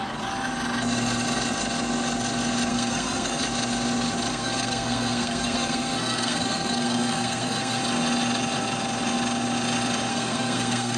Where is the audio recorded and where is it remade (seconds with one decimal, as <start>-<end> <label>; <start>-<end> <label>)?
0.0-2.7 recorded; 2.7-3.4 remade; 3.4-4.3 recorded; 4.3-7.8 remade; 7.8-10.1 recorded; 10.1-11.0 remade